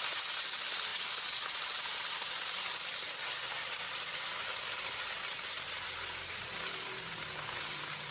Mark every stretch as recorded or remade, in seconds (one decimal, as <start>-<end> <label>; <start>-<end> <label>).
0.0-8.1 recorded